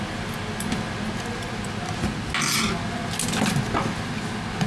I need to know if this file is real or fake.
real